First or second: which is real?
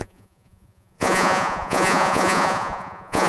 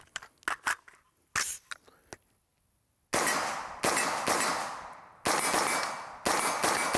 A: second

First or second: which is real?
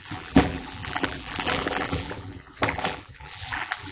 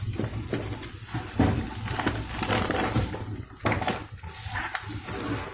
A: second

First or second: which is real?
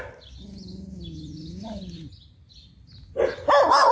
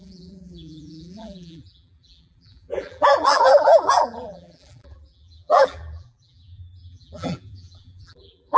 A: first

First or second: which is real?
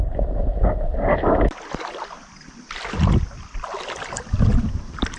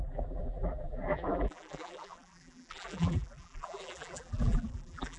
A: first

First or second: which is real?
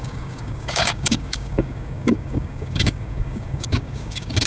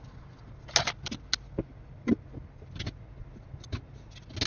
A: second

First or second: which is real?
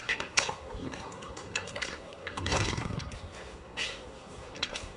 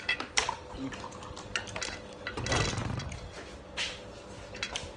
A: second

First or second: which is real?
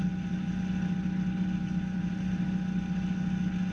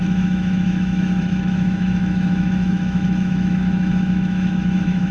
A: first